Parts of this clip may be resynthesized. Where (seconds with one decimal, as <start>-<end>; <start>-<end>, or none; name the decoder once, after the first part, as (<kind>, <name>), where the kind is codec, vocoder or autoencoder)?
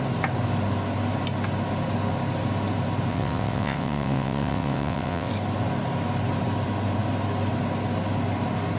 3.1-5.3 (vocoder, WaveNeXt)